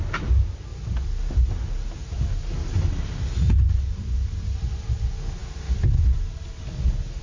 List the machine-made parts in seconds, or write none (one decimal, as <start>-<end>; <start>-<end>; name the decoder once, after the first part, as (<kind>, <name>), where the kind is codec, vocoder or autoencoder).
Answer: none